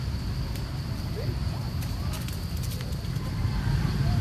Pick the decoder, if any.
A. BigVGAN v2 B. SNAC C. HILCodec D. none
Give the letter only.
D